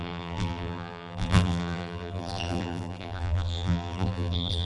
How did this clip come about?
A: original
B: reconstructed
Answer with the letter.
B